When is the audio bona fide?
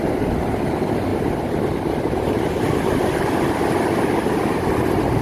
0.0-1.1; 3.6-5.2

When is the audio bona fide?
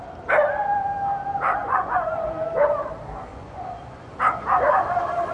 0.0-1.6; 2.3-3.3; 4.1-5.3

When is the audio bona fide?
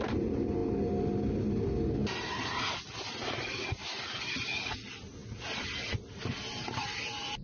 0.0-7.4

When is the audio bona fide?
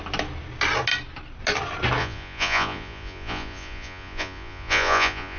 0.0-2.0